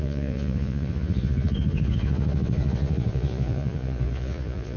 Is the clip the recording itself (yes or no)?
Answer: no